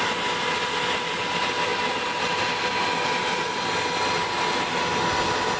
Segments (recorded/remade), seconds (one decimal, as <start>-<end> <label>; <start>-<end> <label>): 0.0-5.6 recorded